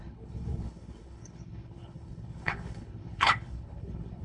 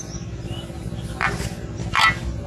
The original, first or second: second